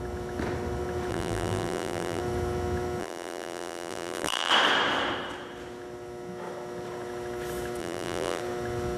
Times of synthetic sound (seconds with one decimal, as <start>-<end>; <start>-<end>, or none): 1.1-2.2; 3.0-4.5; 7.8-8.4